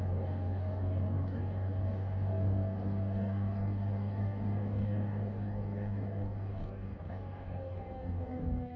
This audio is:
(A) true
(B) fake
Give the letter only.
B